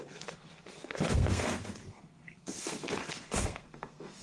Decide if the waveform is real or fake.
fake